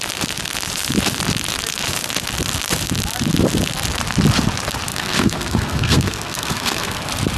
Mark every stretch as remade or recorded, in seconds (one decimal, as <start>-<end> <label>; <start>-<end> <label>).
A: 0.0-4.9 recorded; 4.9-7.0 remade; 7.0-7.4 recorded